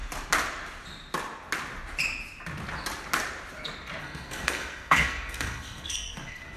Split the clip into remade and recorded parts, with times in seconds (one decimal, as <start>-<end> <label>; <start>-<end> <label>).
0.0-4.0 recorded; 4.0-6.6 remade